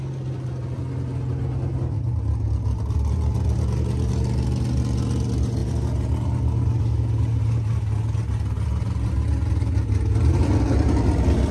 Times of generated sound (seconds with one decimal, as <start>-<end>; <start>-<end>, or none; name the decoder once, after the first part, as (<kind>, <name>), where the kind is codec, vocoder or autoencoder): none